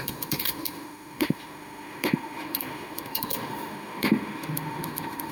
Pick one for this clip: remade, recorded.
remade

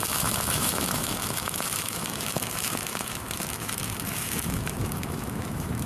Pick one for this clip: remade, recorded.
remade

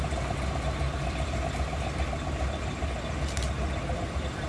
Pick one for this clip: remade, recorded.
recorded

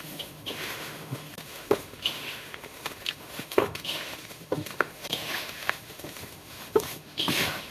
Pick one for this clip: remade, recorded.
remade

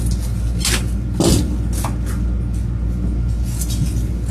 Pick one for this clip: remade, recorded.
recorded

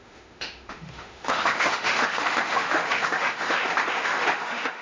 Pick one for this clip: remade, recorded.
remade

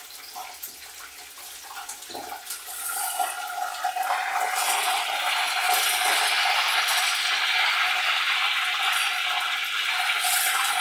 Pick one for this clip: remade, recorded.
recorded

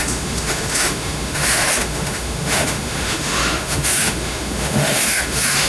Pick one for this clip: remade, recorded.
remade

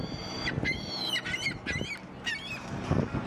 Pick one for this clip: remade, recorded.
recorded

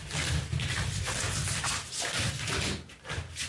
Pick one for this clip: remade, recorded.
recorded